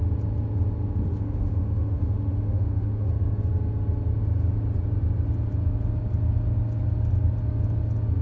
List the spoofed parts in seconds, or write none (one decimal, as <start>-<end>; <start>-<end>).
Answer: 1.1-3.1